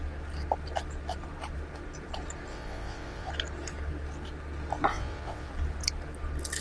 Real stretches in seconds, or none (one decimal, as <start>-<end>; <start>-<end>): 0.0-2.5; 3.3-4.9; 5.5-6.6